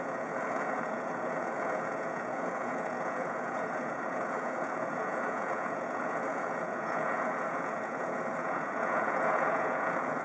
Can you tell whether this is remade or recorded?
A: remade